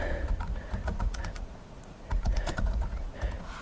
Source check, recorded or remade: remade